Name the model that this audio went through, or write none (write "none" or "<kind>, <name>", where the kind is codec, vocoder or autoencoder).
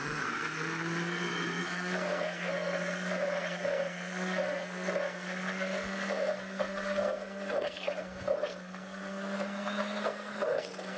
codec, SNAC